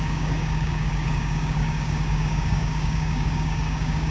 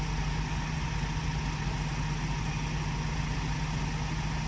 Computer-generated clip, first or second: first